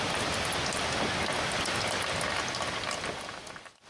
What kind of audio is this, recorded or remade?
recorded